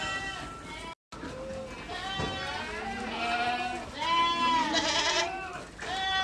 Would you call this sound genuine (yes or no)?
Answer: yes